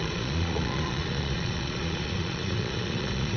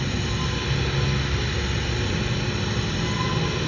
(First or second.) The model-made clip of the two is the first